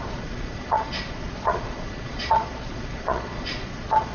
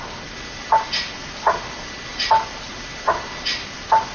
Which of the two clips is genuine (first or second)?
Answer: second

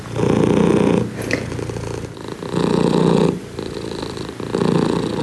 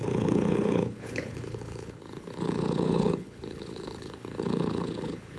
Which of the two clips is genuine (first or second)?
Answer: first